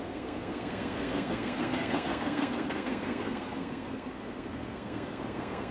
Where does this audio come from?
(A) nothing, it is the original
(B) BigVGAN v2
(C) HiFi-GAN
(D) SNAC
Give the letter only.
D